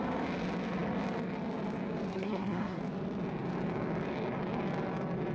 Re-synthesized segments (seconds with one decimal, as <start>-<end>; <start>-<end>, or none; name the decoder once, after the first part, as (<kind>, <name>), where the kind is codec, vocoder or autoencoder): 2.1-2.8 (codec, SNAC)